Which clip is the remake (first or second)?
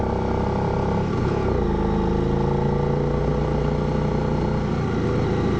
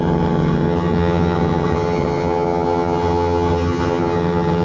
second